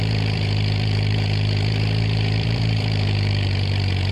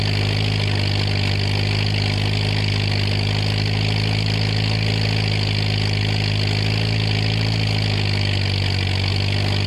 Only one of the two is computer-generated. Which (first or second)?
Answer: first